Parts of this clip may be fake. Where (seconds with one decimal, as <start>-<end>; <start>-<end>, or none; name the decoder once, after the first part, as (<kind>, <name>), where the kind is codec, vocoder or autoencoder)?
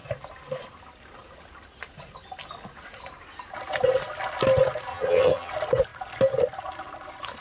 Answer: 4.9-5.5 (vocoder, HiFi-GAN)